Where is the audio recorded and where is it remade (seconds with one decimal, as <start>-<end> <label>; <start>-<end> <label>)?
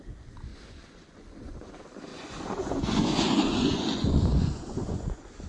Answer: 0.0-0.5 recorded; 0.5-1.7 remade; 1.7-2.1 recorded; 2.1-5.5 remade